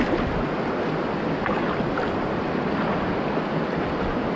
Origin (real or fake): real